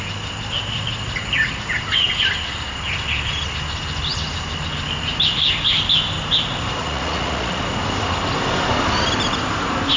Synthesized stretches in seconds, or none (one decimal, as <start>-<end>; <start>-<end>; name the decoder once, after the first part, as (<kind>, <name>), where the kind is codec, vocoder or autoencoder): 6.8-7.6 (vocoder, Vocos)